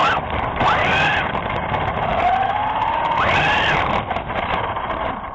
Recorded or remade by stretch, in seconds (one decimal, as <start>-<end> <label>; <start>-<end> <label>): 0.0-0.5 remade; 0.5-5.3 recorded